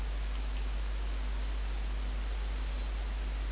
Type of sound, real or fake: real